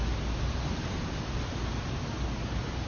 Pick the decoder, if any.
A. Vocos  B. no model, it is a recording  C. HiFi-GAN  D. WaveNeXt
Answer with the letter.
B